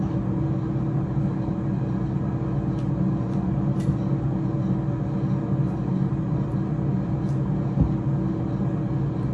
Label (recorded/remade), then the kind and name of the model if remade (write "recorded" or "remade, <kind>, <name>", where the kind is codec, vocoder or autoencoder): recorded